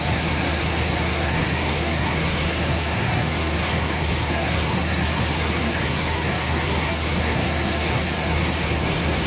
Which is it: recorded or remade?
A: remade